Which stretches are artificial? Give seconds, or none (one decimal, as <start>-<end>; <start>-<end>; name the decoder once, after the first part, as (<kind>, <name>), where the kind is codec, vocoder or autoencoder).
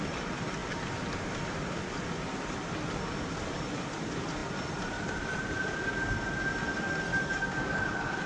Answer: 7.1-8.3 (codec, DAC)